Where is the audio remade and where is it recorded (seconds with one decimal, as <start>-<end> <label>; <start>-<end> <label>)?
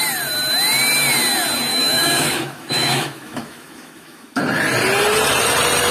0.0-1.7 recorded; 1.7-4.4 remade; 4.4-5.9 recorded